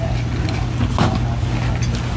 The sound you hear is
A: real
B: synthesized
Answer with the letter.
A